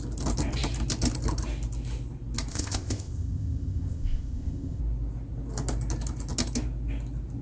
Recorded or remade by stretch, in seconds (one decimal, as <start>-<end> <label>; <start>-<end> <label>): 0.0-2.5 recorded; 2.5-4.8 remade; 4.8-7.4 recorded